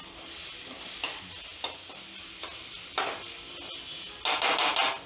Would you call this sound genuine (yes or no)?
yes